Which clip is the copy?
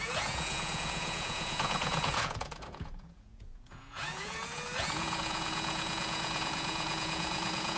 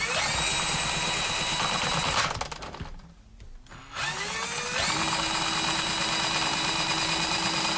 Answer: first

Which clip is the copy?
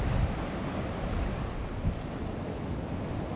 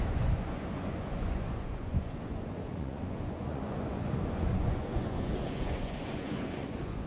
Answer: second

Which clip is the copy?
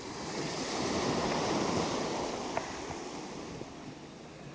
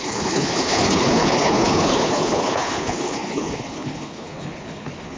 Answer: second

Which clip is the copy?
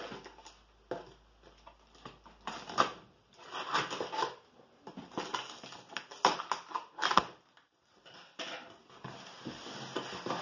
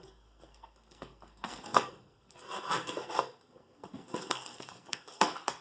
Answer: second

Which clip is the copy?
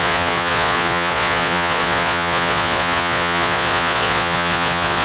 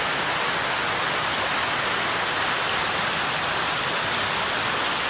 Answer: first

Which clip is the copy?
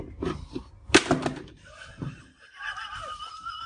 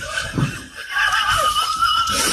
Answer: second